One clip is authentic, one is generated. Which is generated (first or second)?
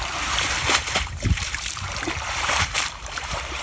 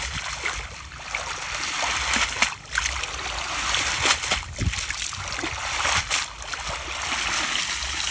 first